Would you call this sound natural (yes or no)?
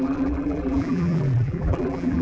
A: no